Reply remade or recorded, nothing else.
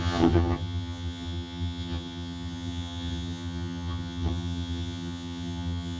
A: remade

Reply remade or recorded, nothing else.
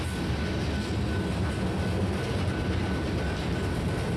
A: recorded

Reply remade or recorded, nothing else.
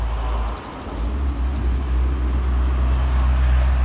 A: recorded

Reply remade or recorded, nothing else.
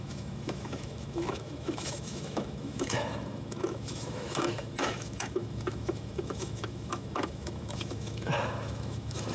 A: remade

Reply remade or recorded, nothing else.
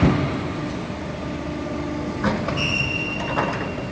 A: recorded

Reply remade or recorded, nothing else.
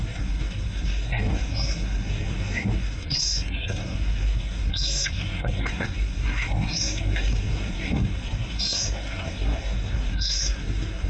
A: remade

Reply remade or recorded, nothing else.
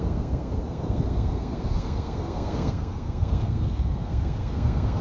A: remade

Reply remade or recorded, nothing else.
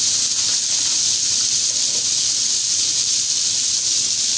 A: recorded